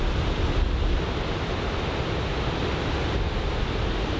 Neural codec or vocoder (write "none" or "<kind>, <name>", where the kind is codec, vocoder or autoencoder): none